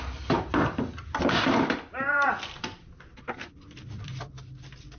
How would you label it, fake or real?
fake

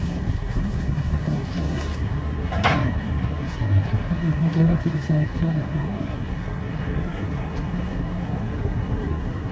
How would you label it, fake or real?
fake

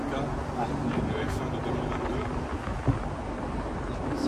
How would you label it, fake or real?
real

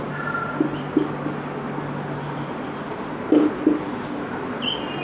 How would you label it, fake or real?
real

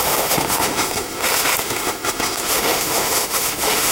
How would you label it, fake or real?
fake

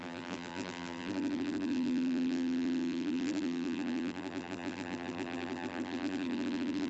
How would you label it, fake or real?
fake